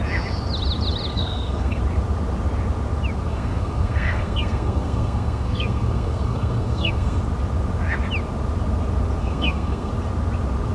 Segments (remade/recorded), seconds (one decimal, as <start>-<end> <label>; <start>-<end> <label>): 0.0-1.1 recorded; 1.1-1.8 remade; 1.8-3.3 recorded; 3.3-7.2 remade; 7.2-9.2 recorded; 9.2-9.9 remade; 9.9-10.7 recorded